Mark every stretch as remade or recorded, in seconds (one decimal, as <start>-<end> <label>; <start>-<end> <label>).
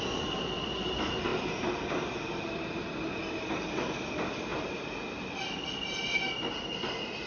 0.0-7.3 recorded